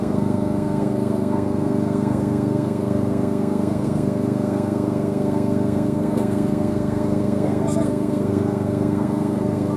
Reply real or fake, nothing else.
fake